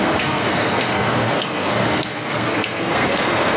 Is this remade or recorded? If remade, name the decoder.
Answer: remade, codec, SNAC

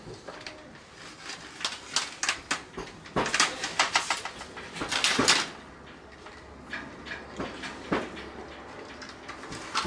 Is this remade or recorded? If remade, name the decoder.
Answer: recorded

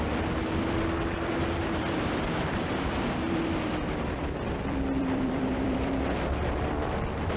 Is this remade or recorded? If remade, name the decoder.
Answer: remade, vocoder, BigVGAN v2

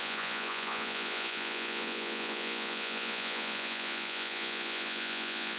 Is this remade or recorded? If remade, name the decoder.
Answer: remade, vocoder, Vocos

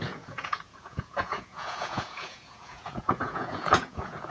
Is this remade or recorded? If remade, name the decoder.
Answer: remade, vocoder, Vocos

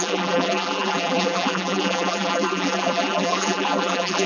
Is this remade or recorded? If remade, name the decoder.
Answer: remade, vocoder, BigVGAN v2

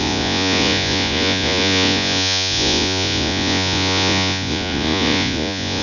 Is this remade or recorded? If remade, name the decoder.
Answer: remade, vocoder, Vocos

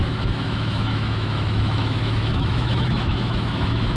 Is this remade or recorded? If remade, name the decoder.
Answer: remade, autoencoder, DAC-VAE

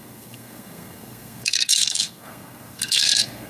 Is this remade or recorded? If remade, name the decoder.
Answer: remade, codec, SNAC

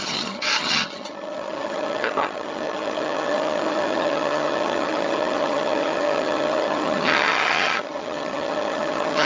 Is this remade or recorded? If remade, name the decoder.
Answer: remade, vocoder, HiFi-GAN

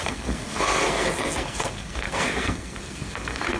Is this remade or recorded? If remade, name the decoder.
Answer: remade, codec, SNAC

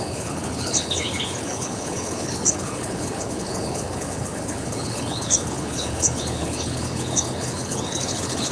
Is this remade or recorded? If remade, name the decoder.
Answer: remade, codec, HILCodec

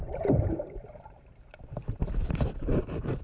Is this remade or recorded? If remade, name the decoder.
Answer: remade, vocoder, BigVGAN v2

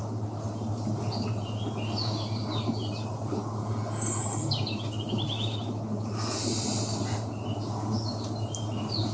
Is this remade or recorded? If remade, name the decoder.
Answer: recorded